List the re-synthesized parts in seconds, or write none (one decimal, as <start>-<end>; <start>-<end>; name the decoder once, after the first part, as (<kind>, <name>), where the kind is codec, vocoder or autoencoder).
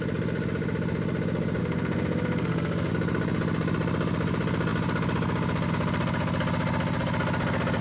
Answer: 1.6-2.9 (autoencoder, DAC-VAE)